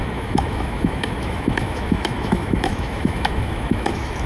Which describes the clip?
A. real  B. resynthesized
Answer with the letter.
B